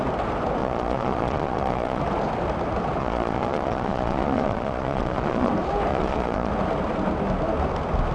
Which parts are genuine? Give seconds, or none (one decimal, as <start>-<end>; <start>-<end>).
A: 0.0-0.6; 2.0-3.0; 5.5-5.9; 6.5-8.1